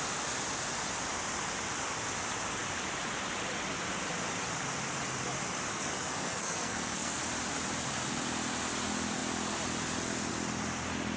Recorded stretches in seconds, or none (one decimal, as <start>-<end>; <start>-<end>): 0.0-5.7; 7.2-11.2